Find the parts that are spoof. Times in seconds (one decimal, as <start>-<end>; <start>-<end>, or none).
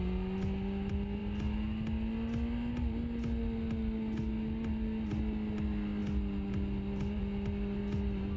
none